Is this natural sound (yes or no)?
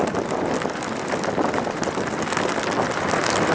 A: no